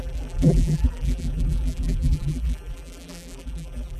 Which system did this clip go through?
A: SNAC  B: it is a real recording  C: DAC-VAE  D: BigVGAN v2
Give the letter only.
D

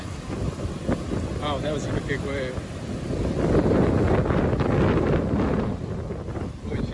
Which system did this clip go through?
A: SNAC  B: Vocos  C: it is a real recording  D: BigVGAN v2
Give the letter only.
C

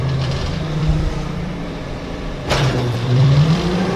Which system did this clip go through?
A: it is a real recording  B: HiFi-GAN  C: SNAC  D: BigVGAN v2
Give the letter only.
D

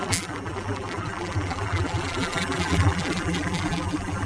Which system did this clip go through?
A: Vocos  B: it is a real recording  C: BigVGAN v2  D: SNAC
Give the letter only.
C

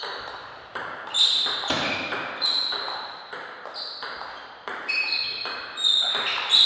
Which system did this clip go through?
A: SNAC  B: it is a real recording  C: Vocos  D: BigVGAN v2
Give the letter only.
D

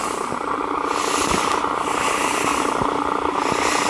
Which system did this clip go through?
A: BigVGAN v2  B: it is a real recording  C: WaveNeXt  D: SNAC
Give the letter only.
B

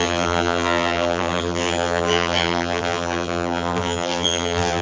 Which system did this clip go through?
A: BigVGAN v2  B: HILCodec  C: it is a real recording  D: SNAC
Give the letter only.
A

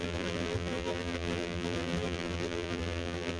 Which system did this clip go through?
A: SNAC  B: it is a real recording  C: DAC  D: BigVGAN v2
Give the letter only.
D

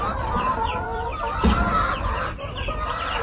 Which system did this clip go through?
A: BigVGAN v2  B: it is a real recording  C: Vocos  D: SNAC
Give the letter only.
A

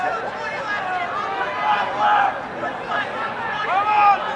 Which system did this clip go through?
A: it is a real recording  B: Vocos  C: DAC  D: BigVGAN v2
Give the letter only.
A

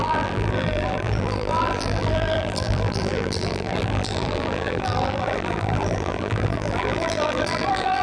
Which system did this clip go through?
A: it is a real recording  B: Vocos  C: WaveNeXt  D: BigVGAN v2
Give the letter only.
D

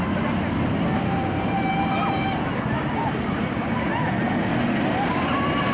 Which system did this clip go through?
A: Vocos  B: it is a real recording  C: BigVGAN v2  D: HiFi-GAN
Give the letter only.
B